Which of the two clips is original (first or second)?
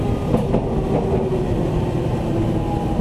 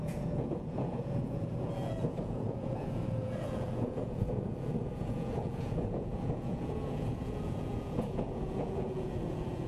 first